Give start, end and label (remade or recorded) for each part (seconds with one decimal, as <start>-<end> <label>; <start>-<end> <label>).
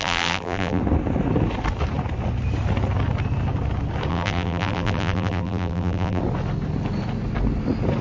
0.0-0.8 remade; 0.8-4.1 recorded; 4.1-6.2 remade; 6.2-8.0 recorded